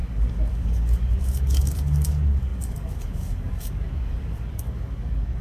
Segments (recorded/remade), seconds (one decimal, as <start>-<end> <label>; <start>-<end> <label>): 0.0-5.4 remade